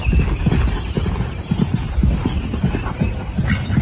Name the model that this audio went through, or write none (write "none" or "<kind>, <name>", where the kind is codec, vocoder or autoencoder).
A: none